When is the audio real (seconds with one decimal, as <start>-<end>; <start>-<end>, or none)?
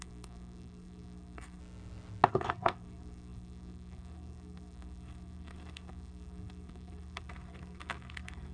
1.6-2.3